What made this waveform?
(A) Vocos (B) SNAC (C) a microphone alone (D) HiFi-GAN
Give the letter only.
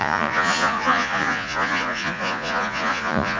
A